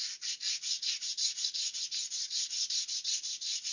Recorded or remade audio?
recorded